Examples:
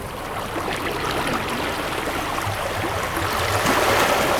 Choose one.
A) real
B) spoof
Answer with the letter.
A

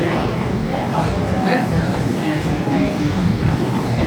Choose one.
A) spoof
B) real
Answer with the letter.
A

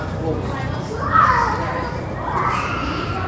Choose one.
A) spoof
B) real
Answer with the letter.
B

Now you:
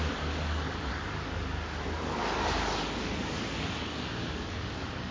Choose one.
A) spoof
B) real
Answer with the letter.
A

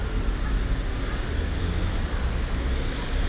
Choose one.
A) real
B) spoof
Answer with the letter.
A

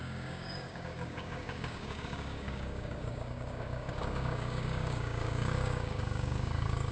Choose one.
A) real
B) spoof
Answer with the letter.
B